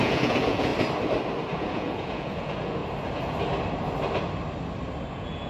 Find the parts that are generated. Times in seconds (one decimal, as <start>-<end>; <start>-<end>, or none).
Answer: 0.0-0.7; 1.6-2.8; 5.1-5.5